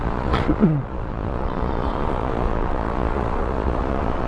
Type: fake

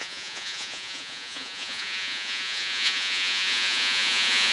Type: fake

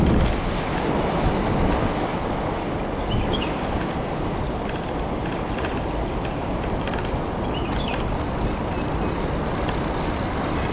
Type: real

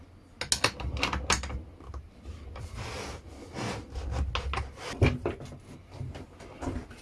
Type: real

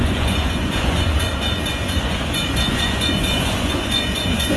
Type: fake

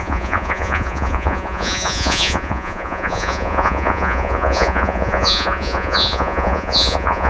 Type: fake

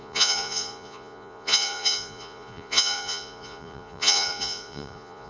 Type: fake